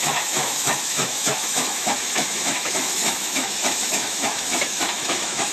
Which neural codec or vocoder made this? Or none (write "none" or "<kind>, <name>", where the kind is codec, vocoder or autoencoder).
autoencoder, DAC-VAE